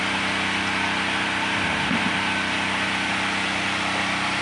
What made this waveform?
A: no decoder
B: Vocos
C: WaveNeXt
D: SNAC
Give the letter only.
A